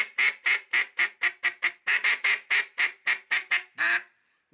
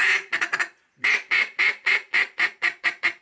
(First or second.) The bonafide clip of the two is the first